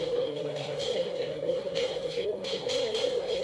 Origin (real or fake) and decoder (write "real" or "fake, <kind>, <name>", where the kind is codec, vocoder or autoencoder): fake, codec, SNAC